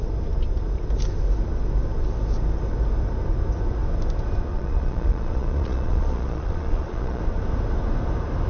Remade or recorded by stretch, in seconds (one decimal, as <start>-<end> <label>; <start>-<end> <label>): 0.0-4.5 recorded; 4.5-7.2 remade; 7.2-8.5 recorded